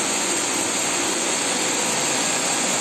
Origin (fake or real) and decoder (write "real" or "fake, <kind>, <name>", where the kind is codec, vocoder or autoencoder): fake, vocoder, Vocos